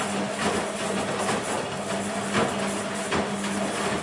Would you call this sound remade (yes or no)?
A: no